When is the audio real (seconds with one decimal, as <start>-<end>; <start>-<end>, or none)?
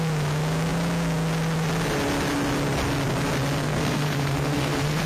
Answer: 0.0-3.6